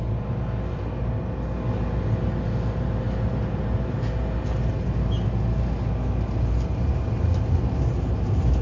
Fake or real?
real